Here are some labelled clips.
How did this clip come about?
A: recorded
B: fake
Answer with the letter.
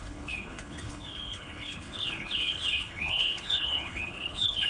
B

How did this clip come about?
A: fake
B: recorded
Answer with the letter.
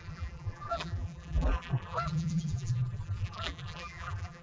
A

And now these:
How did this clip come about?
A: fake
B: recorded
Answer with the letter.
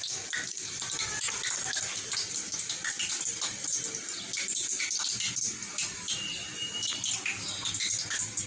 B